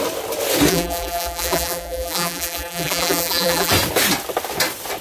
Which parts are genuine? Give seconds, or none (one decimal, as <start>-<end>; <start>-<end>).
0.0-0.7; 3.7-5.0